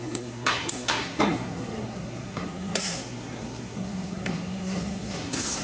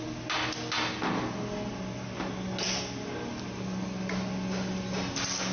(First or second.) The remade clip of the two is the first